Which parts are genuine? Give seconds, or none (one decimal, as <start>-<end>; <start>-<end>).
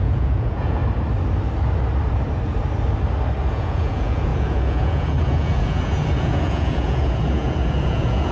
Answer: 0.8-3.5